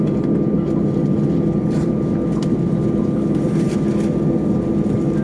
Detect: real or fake real